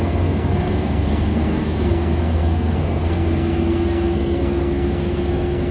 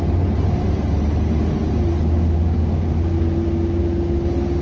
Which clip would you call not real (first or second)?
first